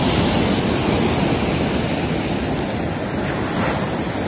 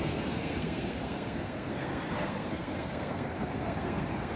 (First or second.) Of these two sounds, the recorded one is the first